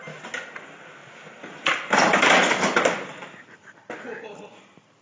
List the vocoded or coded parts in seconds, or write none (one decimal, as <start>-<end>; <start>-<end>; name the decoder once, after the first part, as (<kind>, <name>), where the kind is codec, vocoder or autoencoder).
none